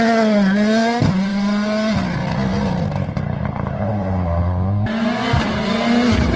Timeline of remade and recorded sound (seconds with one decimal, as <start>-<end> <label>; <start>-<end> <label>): 0.0-6.4 recorded